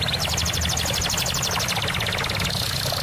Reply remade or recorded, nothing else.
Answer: recorded